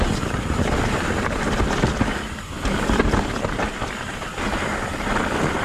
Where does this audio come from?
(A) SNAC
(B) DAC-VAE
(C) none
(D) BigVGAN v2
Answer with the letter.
C